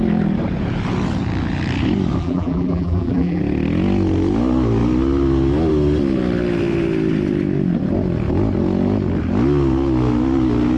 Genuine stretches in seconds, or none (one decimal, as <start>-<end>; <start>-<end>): 0.0-2.2; 3.4-10.8